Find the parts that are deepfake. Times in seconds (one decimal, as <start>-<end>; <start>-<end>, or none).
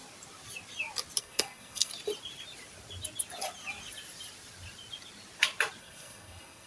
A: 1.2-1.9; 5.8-6.7